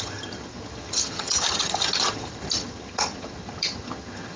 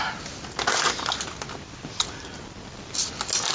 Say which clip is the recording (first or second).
second